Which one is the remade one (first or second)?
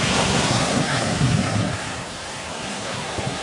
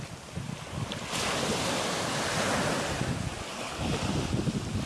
first